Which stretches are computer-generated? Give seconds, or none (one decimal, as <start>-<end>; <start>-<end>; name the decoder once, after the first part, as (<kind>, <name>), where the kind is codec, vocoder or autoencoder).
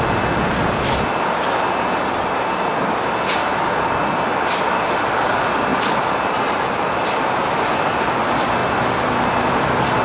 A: none